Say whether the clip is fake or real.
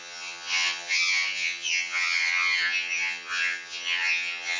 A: fake